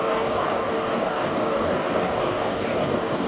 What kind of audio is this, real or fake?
fake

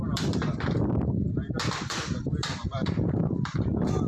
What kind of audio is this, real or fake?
fake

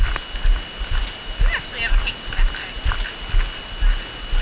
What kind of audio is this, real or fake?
real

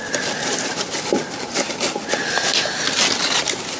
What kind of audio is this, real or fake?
real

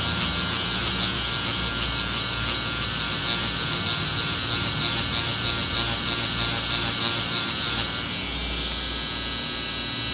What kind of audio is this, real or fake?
real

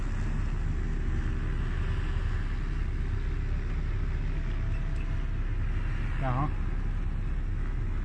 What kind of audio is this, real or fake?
real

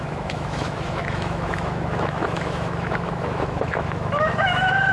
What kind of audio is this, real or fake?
fake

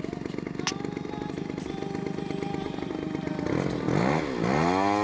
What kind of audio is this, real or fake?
real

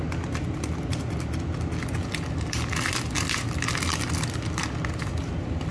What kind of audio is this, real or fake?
real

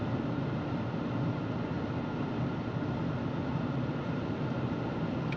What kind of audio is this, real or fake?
real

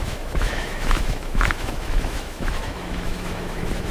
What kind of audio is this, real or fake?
fake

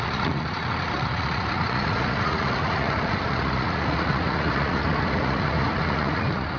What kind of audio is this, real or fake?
fake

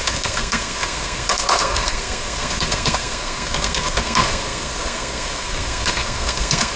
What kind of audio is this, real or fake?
fake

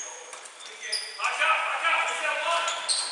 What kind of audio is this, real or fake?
real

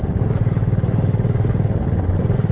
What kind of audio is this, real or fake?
real